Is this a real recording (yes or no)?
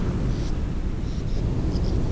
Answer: yes